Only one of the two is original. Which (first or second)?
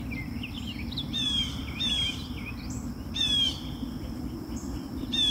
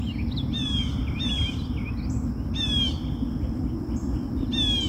second